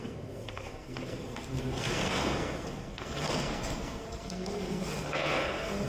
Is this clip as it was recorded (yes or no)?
no